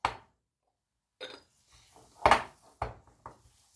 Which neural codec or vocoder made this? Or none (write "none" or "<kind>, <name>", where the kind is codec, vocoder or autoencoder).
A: none